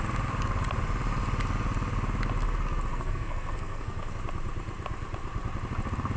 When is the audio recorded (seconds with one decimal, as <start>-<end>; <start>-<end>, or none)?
0.0-2.9; 4.2-6.2